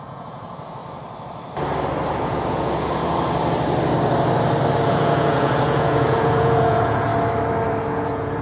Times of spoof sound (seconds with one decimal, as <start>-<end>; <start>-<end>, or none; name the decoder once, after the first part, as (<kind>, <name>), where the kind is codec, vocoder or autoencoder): 0.0-0.8 (vocoder, Vocos); 2.1-3.0; 4.9-7.1; 7.9-8.4

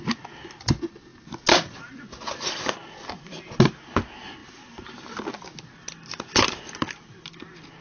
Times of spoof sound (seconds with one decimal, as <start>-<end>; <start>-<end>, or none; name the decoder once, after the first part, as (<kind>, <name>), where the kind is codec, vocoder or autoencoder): none

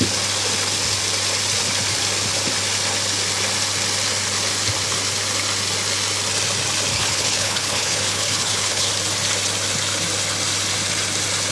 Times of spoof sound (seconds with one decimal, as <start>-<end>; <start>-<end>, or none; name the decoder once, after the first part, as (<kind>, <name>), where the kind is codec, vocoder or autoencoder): 6.9-8.9 (codec, HILCodec)